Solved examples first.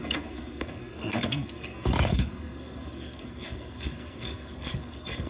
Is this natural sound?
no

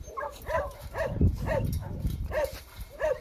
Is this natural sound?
no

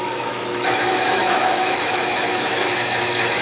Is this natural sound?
no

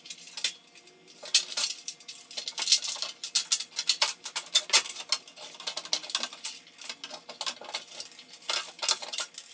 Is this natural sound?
yes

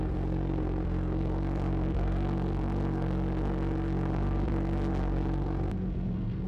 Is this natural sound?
no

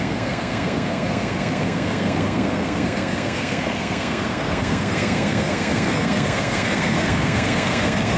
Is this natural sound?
no